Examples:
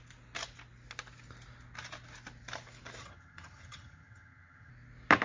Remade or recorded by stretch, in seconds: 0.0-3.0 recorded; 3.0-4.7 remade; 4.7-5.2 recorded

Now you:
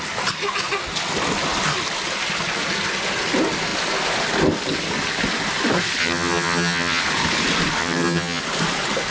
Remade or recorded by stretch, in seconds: 0.0-6.0 recorded; 6.0-7.0 remade; 7.0-7.8 recorded; 7.8-8.4 remade; 8.4-9.1 recorded

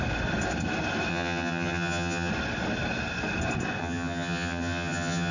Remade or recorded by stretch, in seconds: 0.0-1.1 recorded; 1.1-2.3 remade; 2.3-3.8 recorded; 3.8-5.3 remade

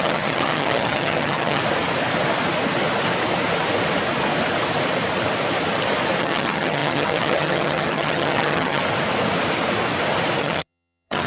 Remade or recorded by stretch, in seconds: 0.0-1.6 remade; 1.6-6.2 recorded; 6.2-8.8 remade; 8.8-10.4 recorded; 10.4-11.3 remade

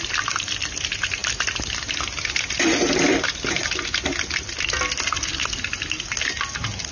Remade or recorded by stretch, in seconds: 0.0-6.9 recorded

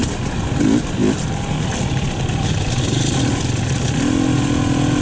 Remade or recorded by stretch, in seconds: 0.0-5.0 recorded

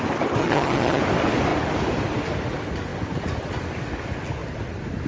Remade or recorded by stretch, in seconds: 0.0-0.4 recorded; 0.4-1.0 remade; 1.0-5.1 recorded

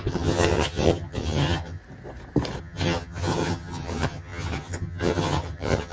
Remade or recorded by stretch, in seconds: 0.0-1.8 remade; 1.8-2.6 recorded; 2.6-5.9 remade